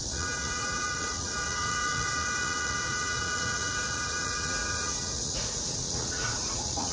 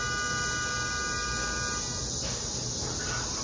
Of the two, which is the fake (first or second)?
first